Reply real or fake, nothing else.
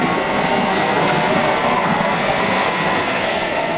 fake